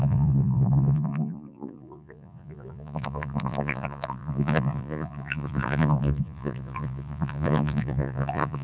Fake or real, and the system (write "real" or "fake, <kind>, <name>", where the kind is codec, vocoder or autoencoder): fake, vocoder, Vocos